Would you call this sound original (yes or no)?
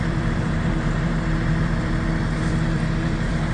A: no